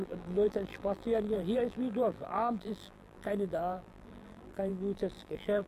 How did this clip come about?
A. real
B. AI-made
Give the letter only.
B